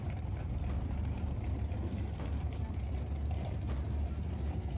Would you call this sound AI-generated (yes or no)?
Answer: yes